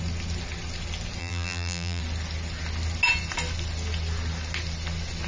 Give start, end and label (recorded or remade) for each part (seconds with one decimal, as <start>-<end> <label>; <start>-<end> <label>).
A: 0.0-1.2 recorded; 1.2-2.0 remade; 2.0-5.3 recorded

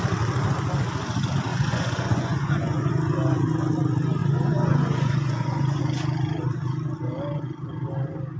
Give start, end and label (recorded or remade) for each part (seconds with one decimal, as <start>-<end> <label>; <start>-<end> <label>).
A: 0.0-1.5 recorded; 1.5-2.9 remade; 2.9-4.2 recorded; 4.2-5.8 remade; 5.8-8.4 recorded